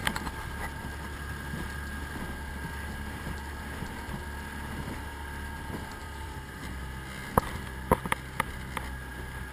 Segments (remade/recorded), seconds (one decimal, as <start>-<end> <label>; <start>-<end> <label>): 0.0-6.0 recorded; 6.0-6.8 remade; 6.8-9.5 recorded